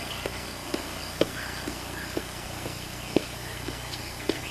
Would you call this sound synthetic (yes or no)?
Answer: yes